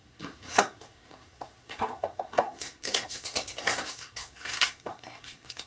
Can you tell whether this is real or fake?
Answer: fake